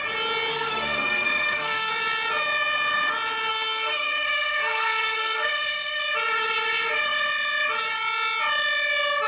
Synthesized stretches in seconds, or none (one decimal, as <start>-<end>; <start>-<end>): 0.5-1.9; 3.5-6.0